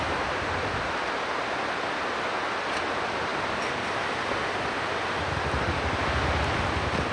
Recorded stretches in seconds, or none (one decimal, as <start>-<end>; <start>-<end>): 0.0-7.1